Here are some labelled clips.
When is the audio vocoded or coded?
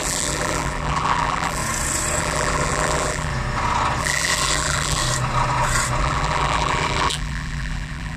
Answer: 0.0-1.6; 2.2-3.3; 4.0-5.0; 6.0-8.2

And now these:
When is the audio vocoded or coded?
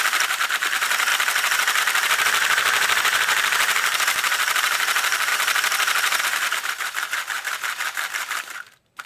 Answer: 0.0-1.1; 1.8-5.3; 6.2-9.1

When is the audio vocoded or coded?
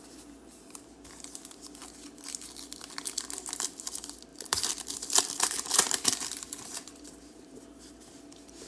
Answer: 4.3-7.2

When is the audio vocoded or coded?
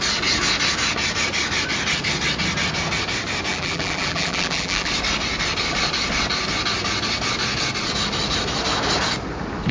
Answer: 3.5-4.9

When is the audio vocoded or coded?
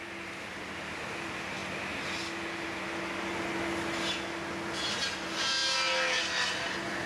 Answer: 0.0-1.6; 4.5-5.6; 6.5-7.1